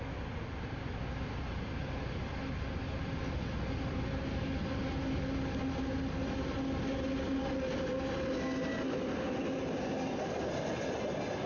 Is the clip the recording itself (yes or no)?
yes